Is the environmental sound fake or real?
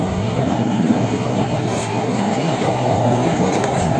fake